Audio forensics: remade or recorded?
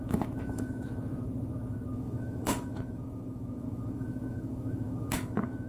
remade